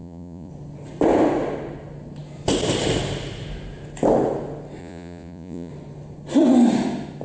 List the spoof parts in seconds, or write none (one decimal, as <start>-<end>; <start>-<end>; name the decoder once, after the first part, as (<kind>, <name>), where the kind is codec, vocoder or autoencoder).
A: 0.0-0.5 (vocoder, Vocos); 4.8-5.7